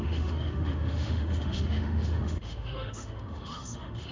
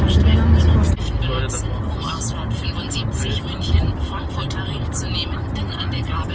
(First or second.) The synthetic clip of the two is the first